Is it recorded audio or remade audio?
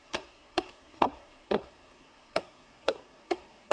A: remade